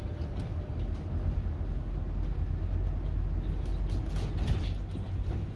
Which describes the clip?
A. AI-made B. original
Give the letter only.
B